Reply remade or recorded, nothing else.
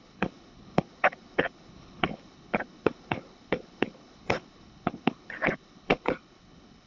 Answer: remade